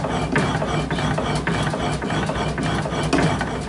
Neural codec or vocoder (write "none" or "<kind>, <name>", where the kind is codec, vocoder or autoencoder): none